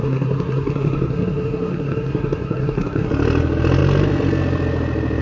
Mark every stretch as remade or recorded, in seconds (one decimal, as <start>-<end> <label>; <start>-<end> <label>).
0.0-3.1 remade; 3.1-5.2 recorded